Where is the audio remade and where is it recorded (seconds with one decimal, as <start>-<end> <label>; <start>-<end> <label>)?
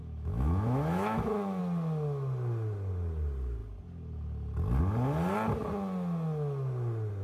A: 0.0-1.6 remade; 1.6-7.2 recorded